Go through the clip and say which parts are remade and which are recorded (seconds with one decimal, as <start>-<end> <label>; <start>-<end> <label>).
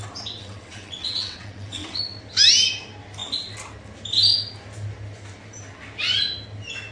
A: 0.0-0.4 recorded; 0.4-2.0 remade; 2.0-6.9 recorded